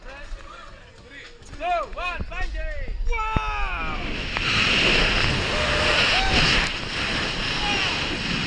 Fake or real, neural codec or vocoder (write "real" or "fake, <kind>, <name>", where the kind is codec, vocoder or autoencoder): real